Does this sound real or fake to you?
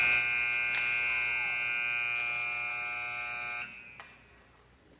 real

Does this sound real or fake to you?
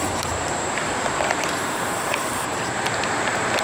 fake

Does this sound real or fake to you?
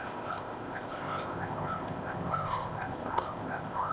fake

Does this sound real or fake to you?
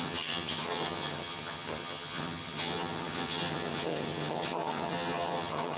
fake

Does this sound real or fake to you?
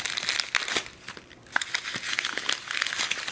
real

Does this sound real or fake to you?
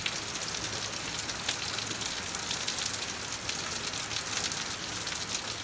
real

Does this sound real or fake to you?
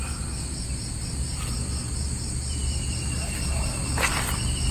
real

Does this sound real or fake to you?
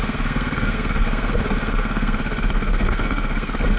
fake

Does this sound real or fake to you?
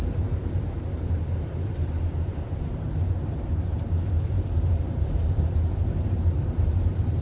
fake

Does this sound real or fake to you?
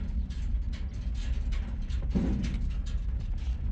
real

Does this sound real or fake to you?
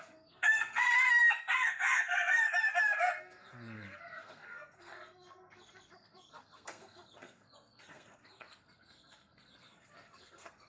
fake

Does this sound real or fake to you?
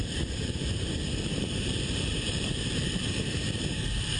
fake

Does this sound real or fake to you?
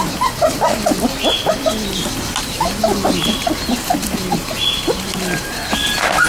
real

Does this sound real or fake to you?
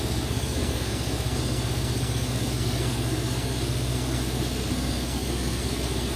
fake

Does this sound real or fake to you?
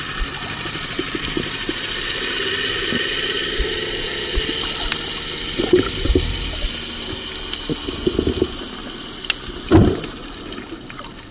real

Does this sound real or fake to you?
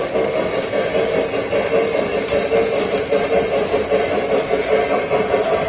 real